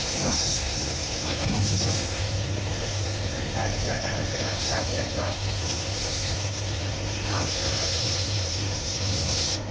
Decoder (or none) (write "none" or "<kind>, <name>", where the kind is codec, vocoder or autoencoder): codec, SNAC